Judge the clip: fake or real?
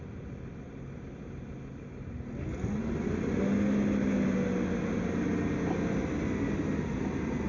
real